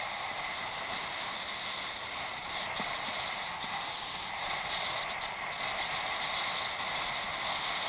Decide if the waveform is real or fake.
real